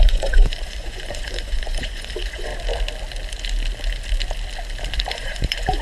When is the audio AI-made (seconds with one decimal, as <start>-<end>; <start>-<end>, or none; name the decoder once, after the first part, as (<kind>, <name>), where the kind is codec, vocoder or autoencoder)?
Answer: 0.0-2.5 (vocoder, Vocos); 5.1-5.8